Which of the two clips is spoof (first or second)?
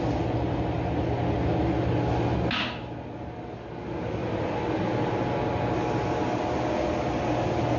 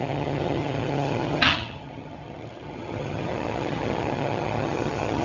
second